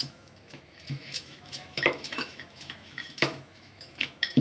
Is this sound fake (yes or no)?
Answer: yes